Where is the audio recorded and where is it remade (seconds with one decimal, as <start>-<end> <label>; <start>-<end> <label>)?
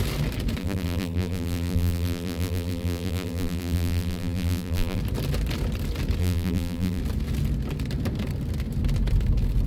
0.0-0.6 recorded; 0.6-5.0 remade; 5.0-6.2 recorded; 6.2-7.0 remade; 7.0-9.7 recorded